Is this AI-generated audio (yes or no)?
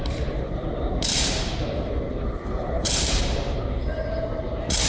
yes